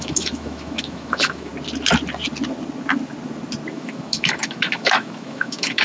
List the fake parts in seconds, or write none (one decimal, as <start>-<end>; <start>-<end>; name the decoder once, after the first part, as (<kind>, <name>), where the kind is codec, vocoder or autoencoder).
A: 0.0-1.5 (autoencoder, DAC-VAE); 3.7-5.8